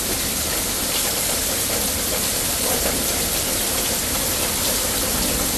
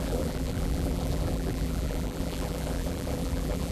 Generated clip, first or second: second